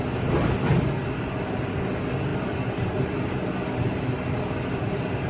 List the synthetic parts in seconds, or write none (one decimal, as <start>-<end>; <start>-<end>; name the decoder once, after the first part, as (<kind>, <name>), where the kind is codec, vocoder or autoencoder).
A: none